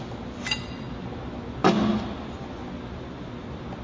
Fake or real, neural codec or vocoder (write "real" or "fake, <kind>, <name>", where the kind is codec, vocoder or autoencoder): real